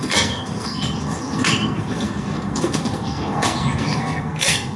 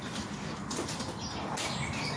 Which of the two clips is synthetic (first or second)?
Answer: first